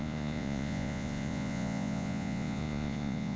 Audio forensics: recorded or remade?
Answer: remade